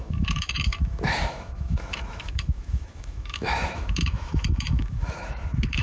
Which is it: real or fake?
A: fake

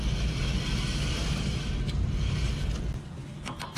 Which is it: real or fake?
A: real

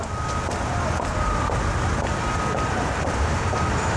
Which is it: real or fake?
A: real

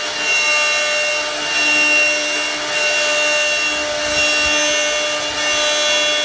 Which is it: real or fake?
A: real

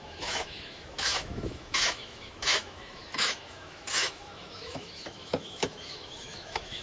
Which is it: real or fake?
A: fake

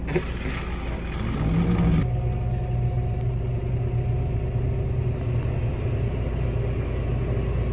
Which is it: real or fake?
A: real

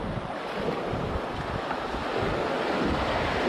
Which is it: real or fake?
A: real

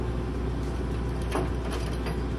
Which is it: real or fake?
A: real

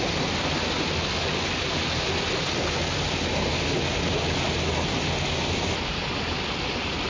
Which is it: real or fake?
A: real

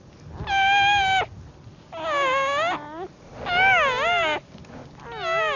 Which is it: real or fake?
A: real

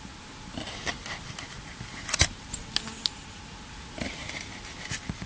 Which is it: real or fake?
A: real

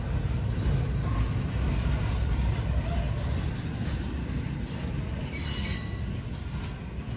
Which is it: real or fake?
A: real